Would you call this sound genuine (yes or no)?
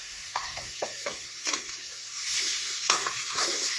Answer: no